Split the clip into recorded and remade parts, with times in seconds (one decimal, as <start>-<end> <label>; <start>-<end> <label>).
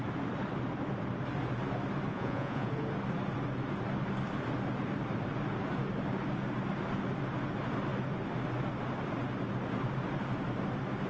0.0-2.1 recorded; 2.1-2.7 remade; 2.7-11.1 recorded